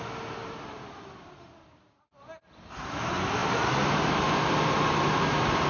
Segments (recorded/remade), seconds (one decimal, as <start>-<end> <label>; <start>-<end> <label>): 0.0-0.4 recorded; 0.4-1.8 remade; 1.8-3.4 recorded; 3.4-5.1 remade; 5.1-5.7 recorded